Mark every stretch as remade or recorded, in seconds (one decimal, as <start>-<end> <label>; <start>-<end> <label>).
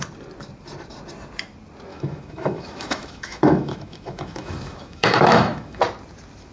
0.0-1.9 recorded; 1.9-5.8 remade; 5.8-6.5 recorded